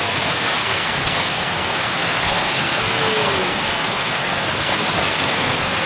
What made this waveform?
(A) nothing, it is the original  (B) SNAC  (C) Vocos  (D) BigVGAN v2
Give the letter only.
B